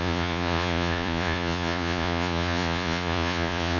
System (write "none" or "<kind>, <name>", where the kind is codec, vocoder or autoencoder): vocoder, Vocos